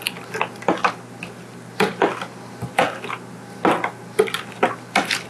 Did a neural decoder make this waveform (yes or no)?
no